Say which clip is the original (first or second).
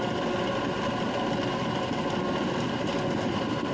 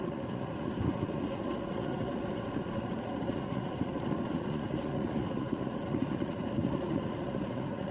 first